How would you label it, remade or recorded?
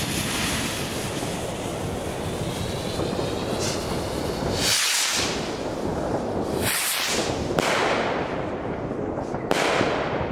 recorded